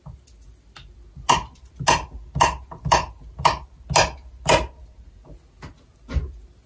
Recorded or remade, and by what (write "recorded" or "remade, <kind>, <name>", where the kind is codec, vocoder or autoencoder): recorded